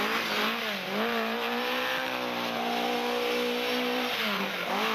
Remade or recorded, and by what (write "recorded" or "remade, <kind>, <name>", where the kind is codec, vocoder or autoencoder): recorded